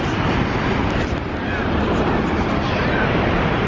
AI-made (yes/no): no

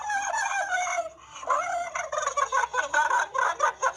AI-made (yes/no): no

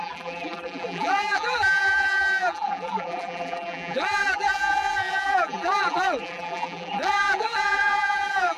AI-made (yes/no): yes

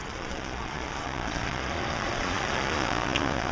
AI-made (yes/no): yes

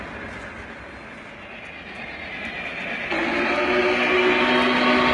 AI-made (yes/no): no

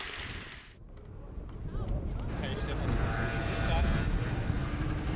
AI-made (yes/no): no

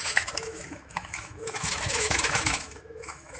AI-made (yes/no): yes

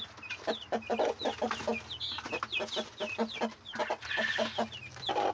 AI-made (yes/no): no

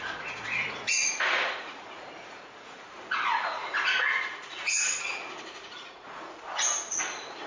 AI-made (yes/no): yes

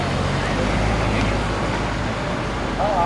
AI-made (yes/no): no